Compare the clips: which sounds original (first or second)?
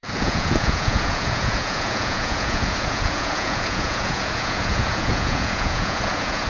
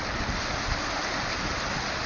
second